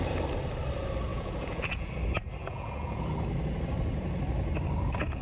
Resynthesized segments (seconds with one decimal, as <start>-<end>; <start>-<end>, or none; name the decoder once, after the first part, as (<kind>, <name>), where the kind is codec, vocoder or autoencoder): 1.1-1.9 (vocoder, Vocos); 2.4-3.0